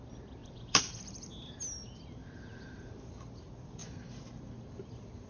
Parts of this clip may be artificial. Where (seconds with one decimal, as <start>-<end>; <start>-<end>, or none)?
0.4-1.0; 2.2-2.9